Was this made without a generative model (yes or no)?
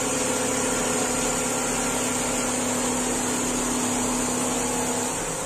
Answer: yes